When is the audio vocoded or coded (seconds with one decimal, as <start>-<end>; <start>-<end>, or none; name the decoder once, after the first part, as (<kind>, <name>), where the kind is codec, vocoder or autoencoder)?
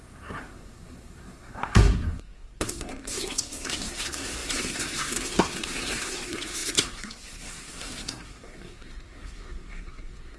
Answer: 0.0-10.4 (codec, SNAC)